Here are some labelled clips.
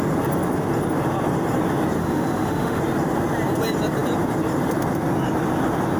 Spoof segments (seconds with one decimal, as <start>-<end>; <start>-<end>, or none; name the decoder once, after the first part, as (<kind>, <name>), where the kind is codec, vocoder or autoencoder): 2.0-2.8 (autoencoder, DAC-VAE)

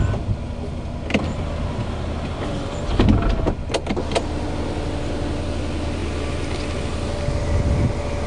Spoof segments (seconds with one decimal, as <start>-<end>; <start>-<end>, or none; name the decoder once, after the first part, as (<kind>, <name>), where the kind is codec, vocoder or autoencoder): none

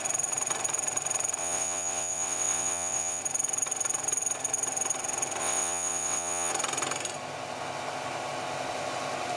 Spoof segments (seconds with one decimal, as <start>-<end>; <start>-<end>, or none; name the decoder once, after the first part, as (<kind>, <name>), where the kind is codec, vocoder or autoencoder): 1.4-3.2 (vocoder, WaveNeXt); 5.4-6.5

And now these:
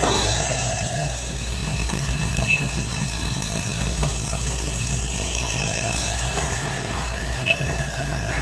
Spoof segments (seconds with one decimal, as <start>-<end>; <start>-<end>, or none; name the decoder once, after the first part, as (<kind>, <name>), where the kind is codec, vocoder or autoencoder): 0.0-8.4 (codec, SNAC)

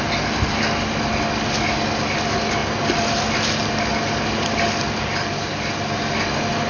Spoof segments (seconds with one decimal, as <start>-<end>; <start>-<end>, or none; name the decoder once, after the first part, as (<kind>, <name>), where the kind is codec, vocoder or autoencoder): none